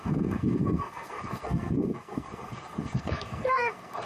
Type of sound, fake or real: fake